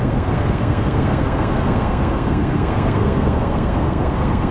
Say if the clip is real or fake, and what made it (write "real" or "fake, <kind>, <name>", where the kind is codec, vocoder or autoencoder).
fake, codec, SNAC